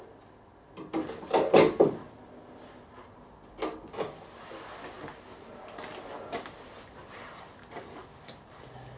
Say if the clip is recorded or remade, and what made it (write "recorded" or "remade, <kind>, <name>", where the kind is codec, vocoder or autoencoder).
recorded